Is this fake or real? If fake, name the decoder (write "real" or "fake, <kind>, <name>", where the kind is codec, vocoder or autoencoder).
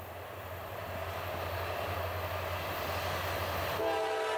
real